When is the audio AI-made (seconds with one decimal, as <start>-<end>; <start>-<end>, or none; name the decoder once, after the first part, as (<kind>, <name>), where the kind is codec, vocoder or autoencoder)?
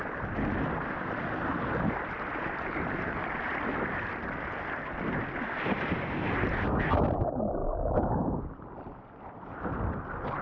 7.6-8.1 (autoencoder, DAC-VAE)